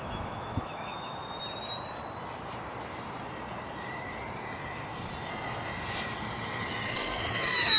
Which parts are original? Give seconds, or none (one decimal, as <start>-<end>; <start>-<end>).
1.2-5.3; 5.7-6.7